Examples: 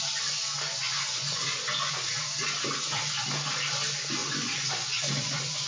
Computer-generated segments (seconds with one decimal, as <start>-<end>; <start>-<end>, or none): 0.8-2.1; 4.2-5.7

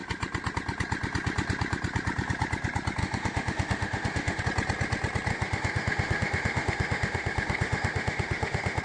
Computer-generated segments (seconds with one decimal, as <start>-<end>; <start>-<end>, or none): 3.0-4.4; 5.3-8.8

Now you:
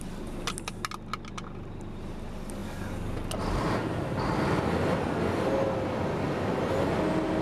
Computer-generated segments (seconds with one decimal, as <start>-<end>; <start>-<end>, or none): none

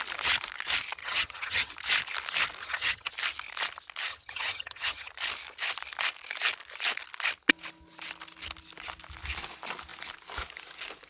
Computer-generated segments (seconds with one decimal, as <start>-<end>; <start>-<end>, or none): 1.0-1.7; 2.6-3.1; 4.1-5.1

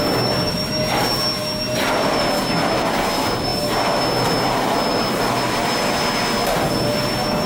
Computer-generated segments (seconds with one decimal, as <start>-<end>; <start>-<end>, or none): none

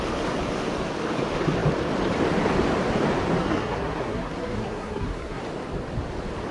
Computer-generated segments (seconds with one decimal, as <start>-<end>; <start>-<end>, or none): 3.4-5.4